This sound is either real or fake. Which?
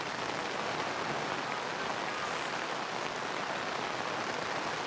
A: real